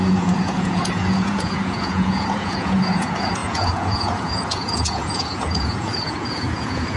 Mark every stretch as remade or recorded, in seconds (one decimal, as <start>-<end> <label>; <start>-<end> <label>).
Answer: 0.0-7.0 remade